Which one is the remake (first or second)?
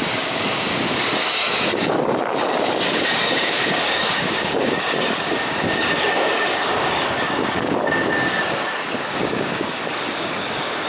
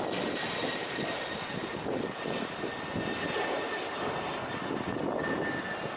first